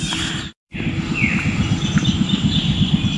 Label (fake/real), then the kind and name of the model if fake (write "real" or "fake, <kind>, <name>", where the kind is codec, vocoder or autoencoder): fake, vocoder, BigVGAN v2